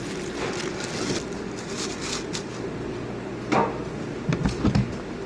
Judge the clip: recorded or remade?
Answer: recorded